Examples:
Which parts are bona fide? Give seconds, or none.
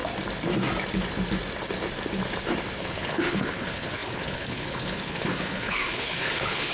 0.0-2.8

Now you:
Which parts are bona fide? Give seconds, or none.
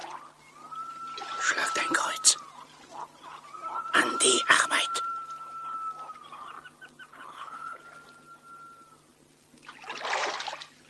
0.0-7.1; 7.8-10.9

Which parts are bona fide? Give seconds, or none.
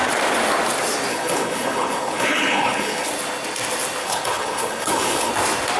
0.0-1.1; 3.1-4.0; 5.3-5.8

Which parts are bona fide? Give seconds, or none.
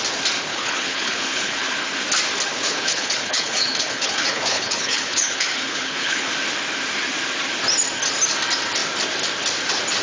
0.0-0.5; 1.7-2.5; 6.3-10.0